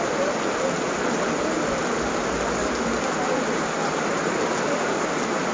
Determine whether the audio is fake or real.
real